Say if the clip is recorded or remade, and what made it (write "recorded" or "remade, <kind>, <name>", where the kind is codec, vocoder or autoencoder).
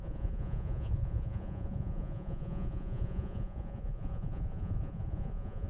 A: remade, vocoder, Vocos